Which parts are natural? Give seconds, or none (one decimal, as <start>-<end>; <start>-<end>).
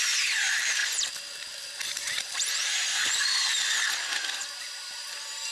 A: 0.8-1.9; 3.3-4.6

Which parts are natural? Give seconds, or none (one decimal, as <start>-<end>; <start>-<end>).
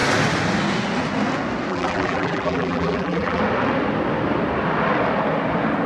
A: 0.0-1.7; 3.4-5.9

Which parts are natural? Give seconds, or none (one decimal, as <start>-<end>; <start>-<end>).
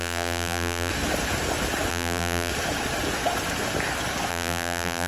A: 0.9-1.9; 2.5-4.3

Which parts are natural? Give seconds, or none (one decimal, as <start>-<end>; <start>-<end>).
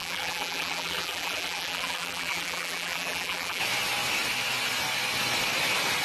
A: 3.6-6.0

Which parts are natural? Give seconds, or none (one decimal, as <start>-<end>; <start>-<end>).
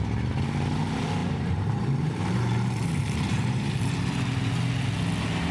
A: 0.0-1.2; 4.5-5.5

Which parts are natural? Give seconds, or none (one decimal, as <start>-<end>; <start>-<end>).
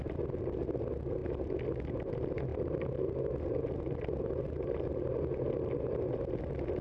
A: 0.0-6.8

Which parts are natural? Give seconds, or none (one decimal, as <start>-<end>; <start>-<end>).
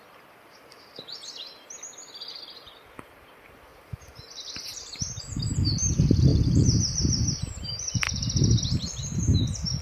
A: 0.0-3.7; 5.2-6.3; 8.6-9.8